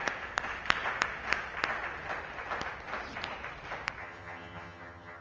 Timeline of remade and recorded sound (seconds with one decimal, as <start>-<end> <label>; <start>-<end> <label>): 0.0-4.0 recorded; 4.0-5.2 remade